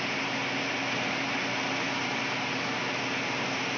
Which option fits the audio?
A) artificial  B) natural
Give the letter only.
B